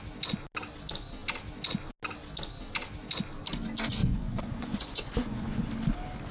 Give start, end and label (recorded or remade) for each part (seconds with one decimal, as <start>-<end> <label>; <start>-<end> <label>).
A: 0.0-4.0 recorded; 4.0-5.7 remade; 5.7-6.3 recorded